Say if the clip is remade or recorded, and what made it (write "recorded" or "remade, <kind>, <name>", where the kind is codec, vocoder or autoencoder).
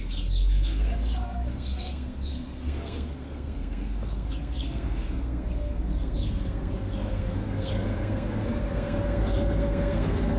remade, codec, SNAC